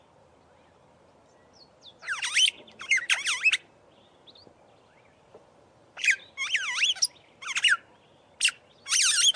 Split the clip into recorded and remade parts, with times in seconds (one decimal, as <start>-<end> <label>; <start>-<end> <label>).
0.0-5.3 recorded; 5.3-6.3 remade; 6.3-9.4 recorded